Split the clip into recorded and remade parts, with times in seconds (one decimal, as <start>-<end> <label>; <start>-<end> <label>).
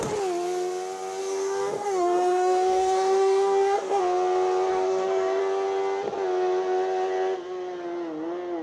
0.0-1.2 recorded; 1.2-4.0 remade; 4.0-4.7 recorded; 4.7-5.4 remade; 5.4-8.6 recorded